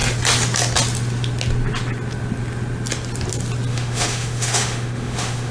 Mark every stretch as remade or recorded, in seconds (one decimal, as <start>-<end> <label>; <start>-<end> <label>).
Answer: 0.0-3.7 recorded; 3.7-5.5 remade